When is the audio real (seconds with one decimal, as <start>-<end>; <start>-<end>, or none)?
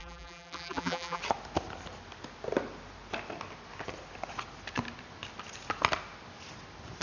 1.2-7.0